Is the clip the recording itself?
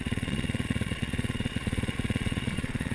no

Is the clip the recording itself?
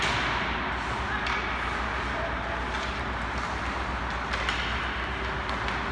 yes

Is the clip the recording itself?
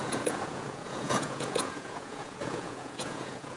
no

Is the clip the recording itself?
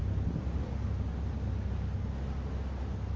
yes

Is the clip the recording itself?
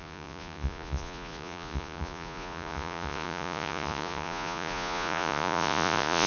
no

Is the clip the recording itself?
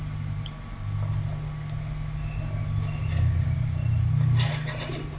yes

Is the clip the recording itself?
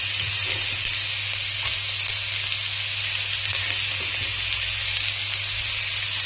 yes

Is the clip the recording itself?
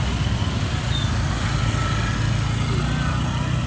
yes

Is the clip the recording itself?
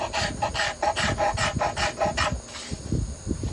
yes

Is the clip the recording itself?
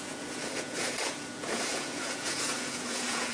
no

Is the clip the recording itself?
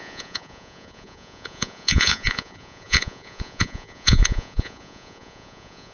no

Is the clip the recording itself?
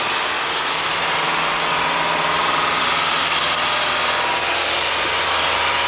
yes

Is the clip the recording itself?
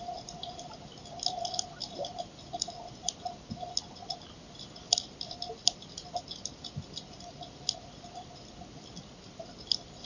yes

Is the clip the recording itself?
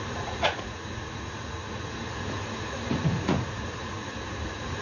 no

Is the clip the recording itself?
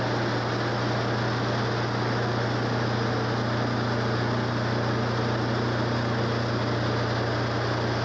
yes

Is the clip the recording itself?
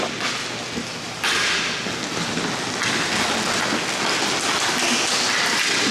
yes